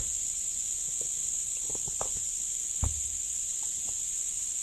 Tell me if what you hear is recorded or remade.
recorded